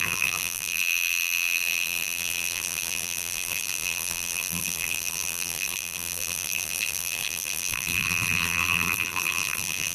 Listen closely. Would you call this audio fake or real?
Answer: fake